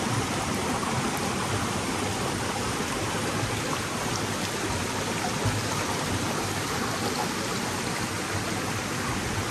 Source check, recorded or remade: recorded